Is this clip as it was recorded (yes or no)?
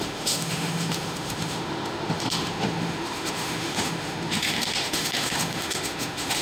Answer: no